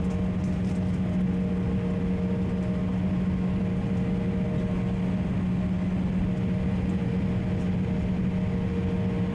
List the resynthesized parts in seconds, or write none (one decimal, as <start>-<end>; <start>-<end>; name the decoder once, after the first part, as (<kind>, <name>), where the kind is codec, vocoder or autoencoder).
none